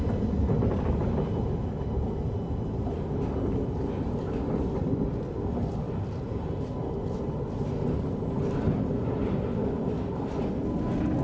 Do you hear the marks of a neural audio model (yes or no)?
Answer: no